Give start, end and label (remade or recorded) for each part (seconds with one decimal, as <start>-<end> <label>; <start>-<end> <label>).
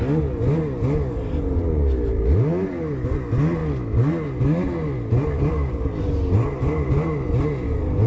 0.0-8.1 recorded